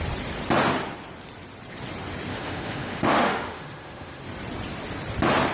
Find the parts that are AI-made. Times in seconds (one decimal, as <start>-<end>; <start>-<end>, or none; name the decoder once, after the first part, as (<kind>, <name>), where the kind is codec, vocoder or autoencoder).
2.3-4.2 (autoencoder, DAC-VAE)